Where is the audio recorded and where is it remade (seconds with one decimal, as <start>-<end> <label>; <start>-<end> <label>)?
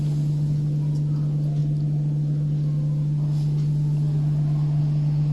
0.0-5.3 recorded